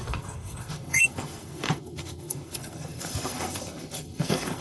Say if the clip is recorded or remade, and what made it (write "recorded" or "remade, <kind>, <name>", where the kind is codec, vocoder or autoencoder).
remade, codec, SNAC